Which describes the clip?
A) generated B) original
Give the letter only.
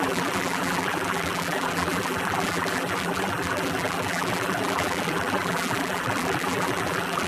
A